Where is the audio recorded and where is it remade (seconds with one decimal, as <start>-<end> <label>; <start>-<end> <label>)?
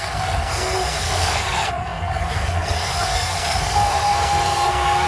0.0-5.1 remade